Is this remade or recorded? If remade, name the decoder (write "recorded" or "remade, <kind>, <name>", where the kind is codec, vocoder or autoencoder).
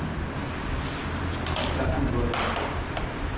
recorded